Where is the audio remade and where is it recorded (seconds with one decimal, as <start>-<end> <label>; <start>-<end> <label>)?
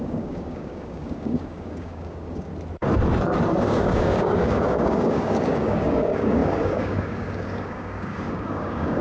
0.0-2.5 remade; 2.5-3.6 recorded; 3.6-9.0 remade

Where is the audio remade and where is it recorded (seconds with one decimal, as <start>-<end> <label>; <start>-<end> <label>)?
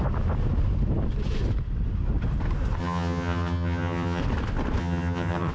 0.0-2.8 recorded; 2.8-4.2 remade; 4.2-4.8 recorded; 4.8-5.5 remade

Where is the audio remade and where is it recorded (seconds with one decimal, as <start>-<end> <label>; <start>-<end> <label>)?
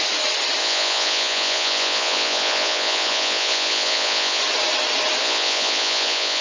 0.0-0.6 recorded; 0.6-4.4 remade; 4.4-5.2 recorded; 5.2-6.4 remade